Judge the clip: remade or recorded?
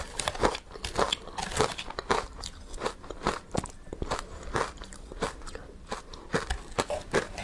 recorded